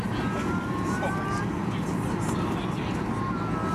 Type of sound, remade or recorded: recorded